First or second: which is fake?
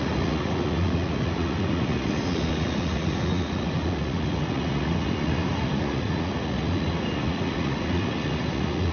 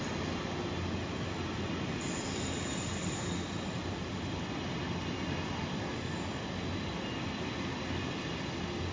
first